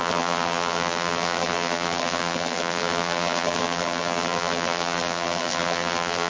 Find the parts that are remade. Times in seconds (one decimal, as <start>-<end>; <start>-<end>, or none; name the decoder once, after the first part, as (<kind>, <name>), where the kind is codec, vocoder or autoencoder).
0.0-6.3 (vocoder, BigVGAN v2)